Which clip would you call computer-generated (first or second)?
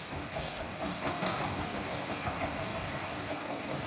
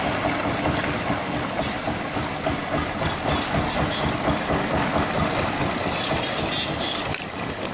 first